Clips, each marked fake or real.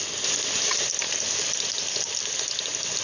real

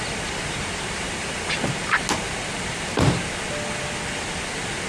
real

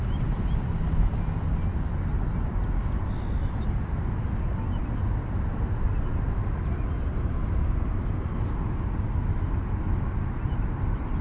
real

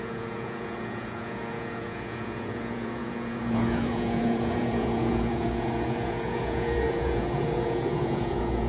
fake